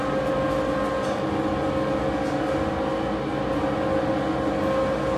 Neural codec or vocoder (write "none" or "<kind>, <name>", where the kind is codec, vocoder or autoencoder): none